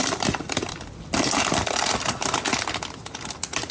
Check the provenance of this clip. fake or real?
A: real